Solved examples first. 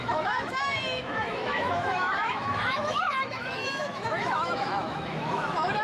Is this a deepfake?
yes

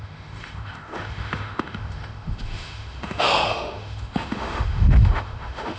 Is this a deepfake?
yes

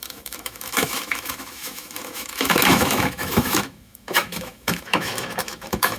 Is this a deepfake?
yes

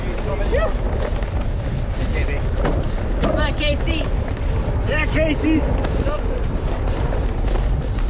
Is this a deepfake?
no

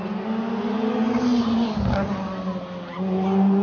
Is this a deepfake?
no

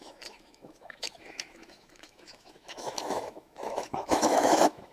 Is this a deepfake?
yes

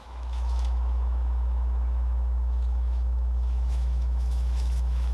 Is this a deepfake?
yes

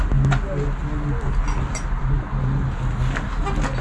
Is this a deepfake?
no